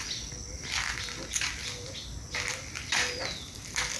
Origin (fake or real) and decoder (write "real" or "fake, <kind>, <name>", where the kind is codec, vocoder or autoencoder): real